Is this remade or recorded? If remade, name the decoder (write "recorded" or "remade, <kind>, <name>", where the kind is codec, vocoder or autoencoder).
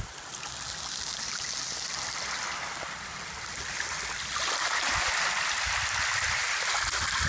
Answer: recorded